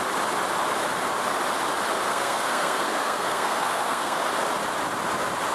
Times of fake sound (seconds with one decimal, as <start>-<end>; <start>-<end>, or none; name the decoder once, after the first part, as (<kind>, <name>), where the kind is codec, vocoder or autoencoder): 2.1-4.2 (codec, SNAC)